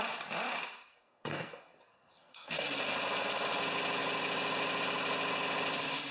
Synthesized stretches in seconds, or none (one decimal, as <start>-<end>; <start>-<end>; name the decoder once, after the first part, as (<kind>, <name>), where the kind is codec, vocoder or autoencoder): 0.7-2.5 (codec, SNAC)